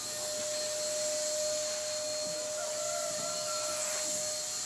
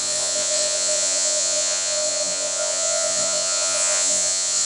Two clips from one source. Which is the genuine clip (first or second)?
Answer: first